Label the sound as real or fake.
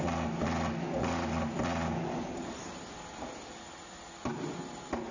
real